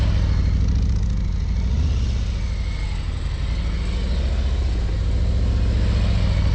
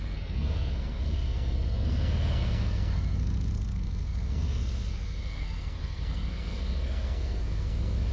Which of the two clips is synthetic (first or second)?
second